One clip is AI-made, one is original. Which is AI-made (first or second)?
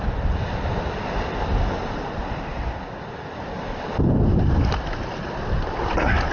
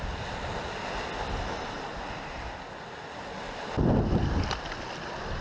first